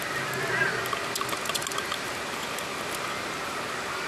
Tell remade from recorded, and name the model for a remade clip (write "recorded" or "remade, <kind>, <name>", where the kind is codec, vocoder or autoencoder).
recorded